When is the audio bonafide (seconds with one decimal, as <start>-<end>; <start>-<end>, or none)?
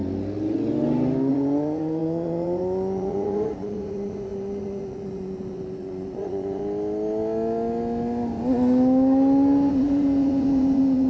0.0-1.3; 6.6-9.7